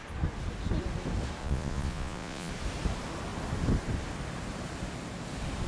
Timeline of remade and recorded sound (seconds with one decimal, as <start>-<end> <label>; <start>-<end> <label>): 0.0-1.4 recorded; 1.4-2.5 remade; 2.5-5.7 recorded